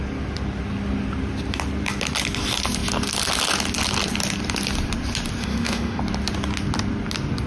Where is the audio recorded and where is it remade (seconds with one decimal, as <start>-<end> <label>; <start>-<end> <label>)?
0.0-5.4 recorded; 5.4-6.0 remade; 6.0-7.5 recorded